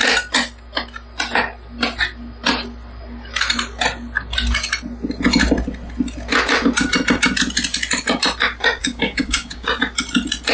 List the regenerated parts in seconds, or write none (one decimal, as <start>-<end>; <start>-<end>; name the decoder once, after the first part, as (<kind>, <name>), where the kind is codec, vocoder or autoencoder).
8.8-9.8 (codec, DAC)